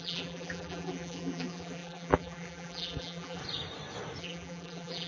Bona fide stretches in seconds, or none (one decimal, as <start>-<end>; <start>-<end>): 3.4-4.2